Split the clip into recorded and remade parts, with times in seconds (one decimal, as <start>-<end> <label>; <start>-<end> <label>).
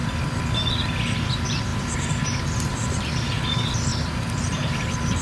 0.0-1.7 recorded; 1.7-3.4 remade; 3.4-3.9 recorded; 3.9-4.7 remade; 4.7-5.2 recorded